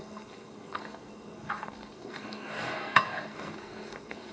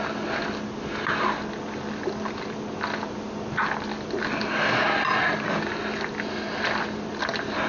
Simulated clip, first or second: first